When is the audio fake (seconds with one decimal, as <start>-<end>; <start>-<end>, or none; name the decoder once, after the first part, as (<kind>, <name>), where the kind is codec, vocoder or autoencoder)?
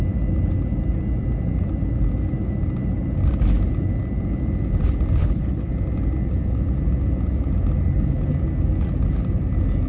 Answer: 5.2-5.7 (codec, HILCodec)